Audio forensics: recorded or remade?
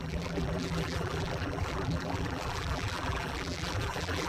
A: remade